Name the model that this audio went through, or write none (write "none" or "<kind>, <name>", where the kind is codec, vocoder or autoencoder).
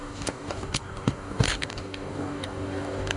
codec, DAC